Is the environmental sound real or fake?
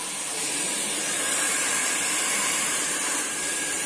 fake